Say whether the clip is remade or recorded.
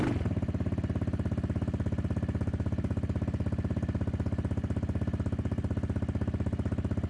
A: recorded